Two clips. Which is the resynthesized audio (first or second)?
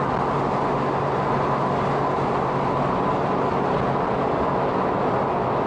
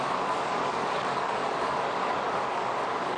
second